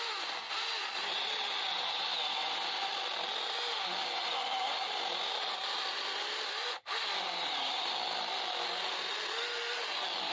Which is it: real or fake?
real